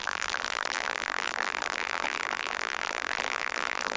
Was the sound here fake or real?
fake